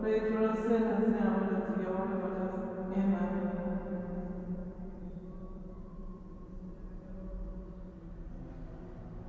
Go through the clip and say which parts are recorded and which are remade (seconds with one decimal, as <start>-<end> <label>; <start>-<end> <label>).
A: 0.0-0.5 recorded; 0.5-1.1 remade; 1.1-4.6 recorded; 4.6-6.2 remade; 6.2-9.3 recorded